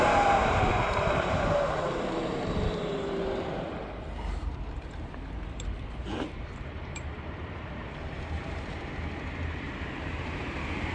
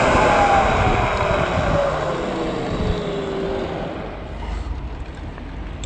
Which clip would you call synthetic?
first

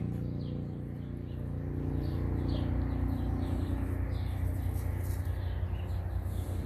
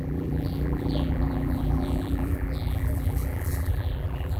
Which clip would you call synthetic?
second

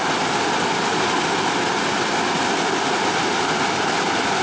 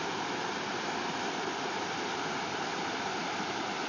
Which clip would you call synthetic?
second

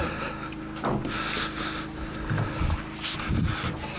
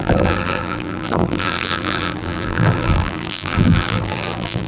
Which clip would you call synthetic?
second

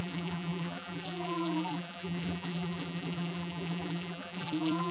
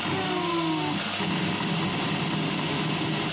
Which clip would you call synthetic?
first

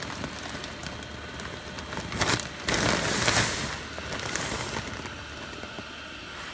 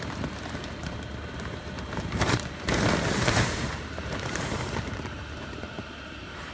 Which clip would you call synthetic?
second